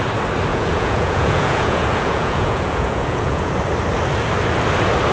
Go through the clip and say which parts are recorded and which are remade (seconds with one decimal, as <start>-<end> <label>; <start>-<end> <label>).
0.0-0.5 recorded; 0.5-3.5 remade; 3.5-5.1 recorded